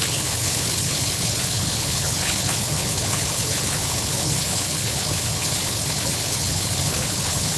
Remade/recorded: remade